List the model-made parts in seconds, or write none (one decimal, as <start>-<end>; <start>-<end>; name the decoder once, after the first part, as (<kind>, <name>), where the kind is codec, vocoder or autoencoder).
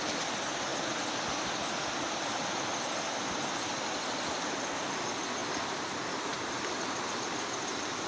none